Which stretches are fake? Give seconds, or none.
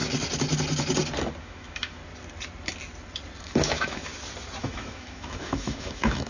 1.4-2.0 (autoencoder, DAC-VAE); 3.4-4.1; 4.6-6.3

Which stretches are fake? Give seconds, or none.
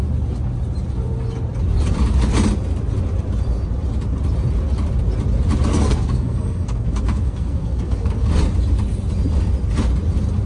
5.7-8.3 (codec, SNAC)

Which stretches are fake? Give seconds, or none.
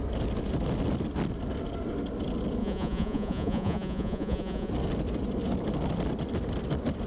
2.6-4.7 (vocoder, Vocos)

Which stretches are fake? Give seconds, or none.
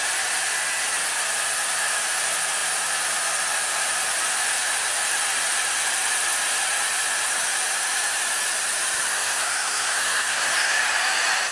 9.1-10.8 (codec, SNAC)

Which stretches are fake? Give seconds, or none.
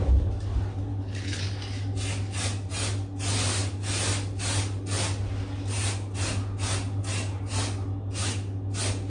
0.9-1.4 (codec, HILCodec)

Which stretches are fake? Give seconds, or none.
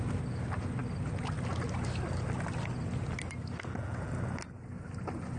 none